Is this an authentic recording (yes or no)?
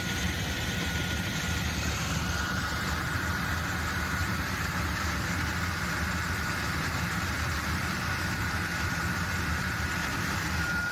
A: no